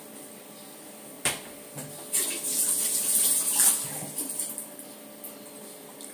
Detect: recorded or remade recorded